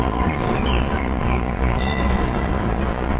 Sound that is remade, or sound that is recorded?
remade